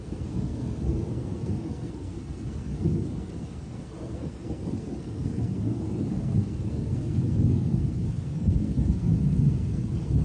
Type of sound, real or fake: fake